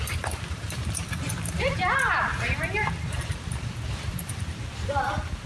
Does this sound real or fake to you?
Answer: fake